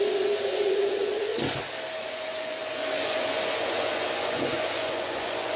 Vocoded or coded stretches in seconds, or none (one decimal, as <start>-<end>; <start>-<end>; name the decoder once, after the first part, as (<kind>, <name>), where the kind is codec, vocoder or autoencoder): 0.0-1.3 (vocoder, Vocos); 2.0-5.6